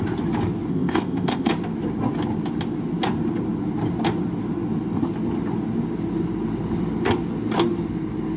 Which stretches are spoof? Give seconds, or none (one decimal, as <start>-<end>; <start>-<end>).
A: 0.7-1.5